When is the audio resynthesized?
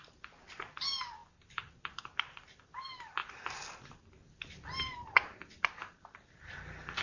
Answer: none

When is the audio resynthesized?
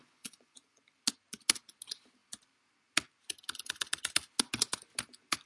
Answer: 0.0-0.8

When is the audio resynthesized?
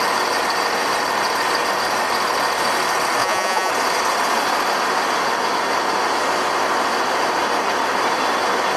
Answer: 3.2-3.7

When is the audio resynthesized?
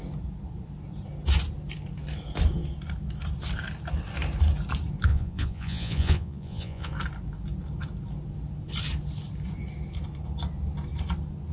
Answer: 5.1-6.9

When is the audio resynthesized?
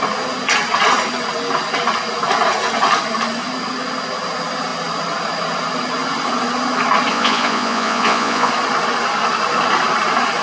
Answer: 7.1-8.5